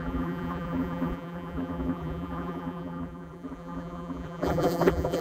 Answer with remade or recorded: remade